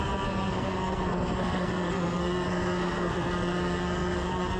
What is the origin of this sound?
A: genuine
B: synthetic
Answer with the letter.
B